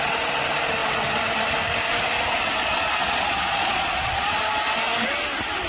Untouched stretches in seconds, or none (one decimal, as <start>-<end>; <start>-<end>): 0.0-2.6; 4.5-5.7

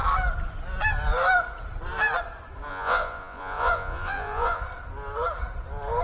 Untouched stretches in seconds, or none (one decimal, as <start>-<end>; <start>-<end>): 0.0-2.7; 4.6-6.0

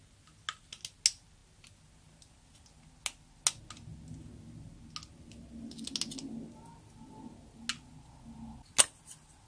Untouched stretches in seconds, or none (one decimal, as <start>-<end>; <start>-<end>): 0.0-9.5

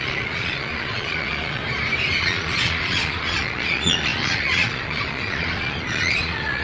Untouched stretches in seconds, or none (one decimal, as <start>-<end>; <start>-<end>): 1.6-2.2

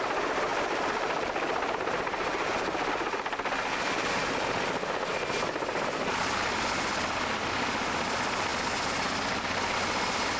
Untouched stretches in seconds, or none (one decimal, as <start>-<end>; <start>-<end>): 0.0-10.4

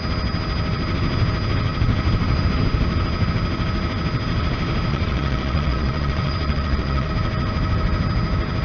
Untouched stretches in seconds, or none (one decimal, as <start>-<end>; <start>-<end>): 0.0-4.9; 7.1-8.6

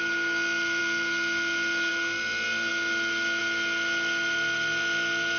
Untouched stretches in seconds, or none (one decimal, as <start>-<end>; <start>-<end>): 0.0-5.4